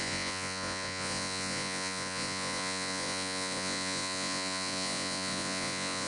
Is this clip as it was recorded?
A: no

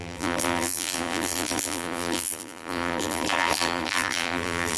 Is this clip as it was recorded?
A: no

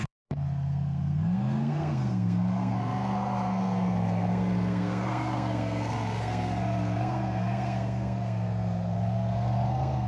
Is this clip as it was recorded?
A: no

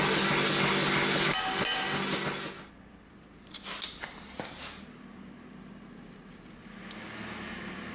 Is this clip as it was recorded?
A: yes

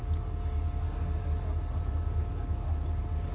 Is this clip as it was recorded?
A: yes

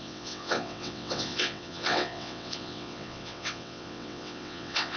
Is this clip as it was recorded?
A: no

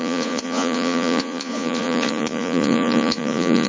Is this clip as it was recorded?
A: no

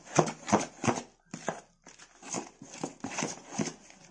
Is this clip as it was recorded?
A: yes